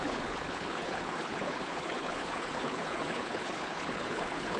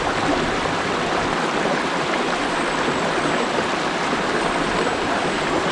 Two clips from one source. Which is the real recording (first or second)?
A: second